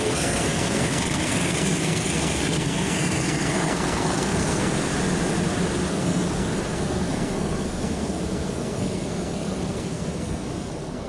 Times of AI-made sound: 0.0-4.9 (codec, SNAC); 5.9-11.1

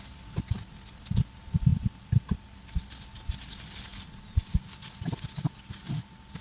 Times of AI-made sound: none

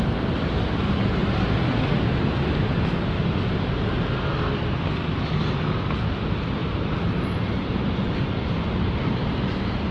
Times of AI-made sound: 1.2-1.7 (vocoder, BigVGAN v2); 6.6-9.1

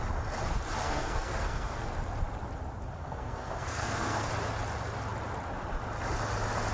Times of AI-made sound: 0.8-1.9 (codec, SNAC); 3.0-4.3

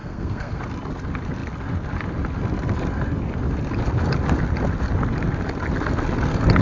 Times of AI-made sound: 0.0-0.6 (codec, SNAC)